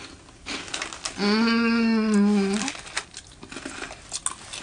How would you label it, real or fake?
real